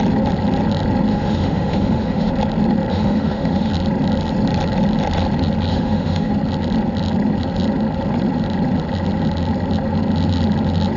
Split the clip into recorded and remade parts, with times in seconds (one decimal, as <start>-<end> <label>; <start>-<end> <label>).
0.0-1.1 recorded; 1.1-2.3 remade; 2.3-2.9 recorded; 2.9-3.7 remade; 3.7-5.7 recorded; 5.7-6.3 remade; 6.3-11.0 recorded